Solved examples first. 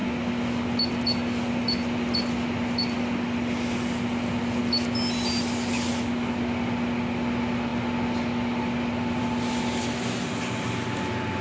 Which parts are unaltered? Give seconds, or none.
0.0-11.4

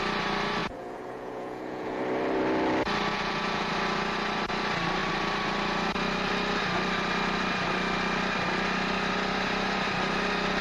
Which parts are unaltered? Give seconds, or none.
0.0-0.6; 2.0-3.1; 3.7-10.6

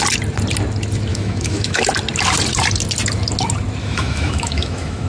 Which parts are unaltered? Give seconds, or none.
0.0-1.1; 1.8-3.8